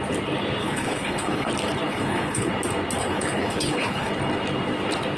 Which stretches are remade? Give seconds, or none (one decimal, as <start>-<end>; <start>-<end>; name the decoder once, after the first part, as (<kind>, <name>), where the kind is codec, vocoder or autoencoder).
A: 0.6-1.5 (codec, HILCodec); 1.9-2.5; 3.0-4.1